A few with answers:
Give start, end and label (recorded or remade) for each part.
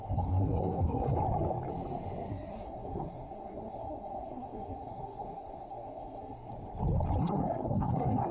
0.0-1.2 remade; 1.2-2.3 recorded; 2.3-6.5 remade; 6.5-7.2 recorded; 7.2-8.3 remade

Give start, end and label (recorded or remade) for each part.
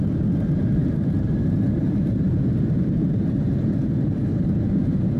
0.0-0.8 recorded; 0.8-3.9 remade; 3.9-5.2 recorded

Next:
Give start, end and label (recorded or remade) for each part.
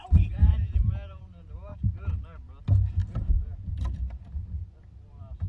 0.0-0.4 recorded; 0.4-1.2 remade; 1.2-3.0 recorded; 3.0-4.0 remade; 4.0-4.6 recorded; 4.6-5.5 remade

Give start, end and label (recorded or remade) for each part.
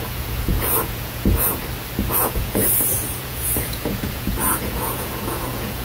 0.0-1.6 remade; 1.6-2.2 recorded; 2.2-5.8 remade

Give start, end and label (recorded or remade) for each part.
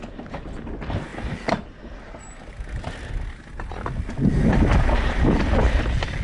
0.0-6.2 recorded